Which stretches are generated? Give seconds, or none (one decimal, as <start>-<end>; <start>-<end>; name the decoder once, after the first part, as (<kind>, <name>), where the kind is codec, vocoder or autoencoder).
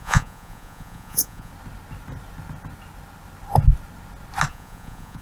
0.0-1.5 (vocoder, Vocos); 4.5-5.2